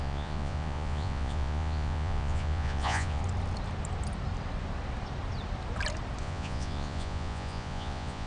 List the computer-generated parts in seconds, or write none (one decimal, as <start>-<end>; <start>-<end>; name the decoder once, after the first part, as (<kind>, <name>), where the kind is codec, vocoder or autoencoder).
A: 0.0-3.2 (vocoder, Vocos); 6.2-8.3